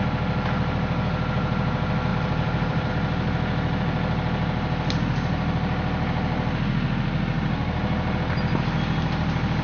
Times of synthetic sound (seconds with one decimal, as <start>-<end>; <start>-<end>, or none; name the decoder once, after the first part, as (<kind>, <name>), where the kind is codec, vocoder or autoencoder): 2.1-2.9 (vocoder, BigVGAN v2)